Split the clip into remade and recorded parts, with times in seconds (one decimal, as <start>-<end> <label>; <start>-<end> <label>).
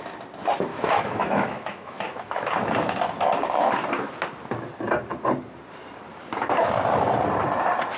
0.0-0.7 recorded; 0.7-2.5 remade; 2.5-8.0 recorded